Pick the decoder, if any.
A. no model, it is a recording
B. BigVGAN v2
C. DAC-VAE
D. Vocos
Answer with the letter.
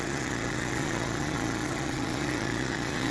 D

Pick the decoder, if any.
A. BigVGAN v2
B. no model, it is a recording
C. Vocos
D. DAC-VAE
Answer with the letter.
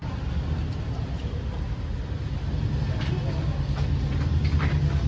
B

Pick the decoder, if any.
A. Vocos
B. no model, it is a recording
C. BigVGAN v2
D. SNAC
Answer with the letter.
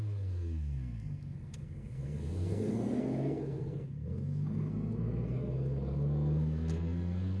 D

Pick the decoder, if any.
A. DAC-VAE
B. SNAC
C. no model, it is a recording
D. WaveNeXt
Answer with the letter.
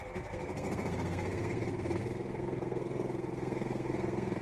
B